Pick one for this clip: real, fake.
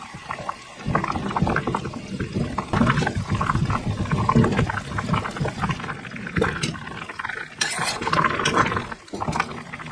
real